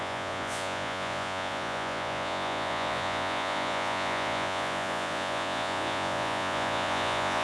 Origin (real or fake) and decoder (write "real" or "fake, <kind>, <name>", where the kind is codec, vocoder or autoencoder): fake, vocoder, Vocos